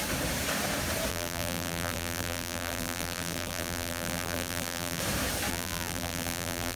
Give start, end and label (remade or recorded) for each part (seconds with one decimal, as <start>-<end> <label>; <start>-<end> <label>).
0.0-1.1 recorded; 1.1-5.0 remade; 5.0-5.5 recorded; 5.5-6.8 remade